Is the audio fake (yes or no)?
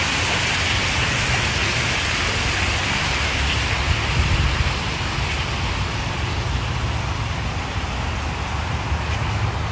no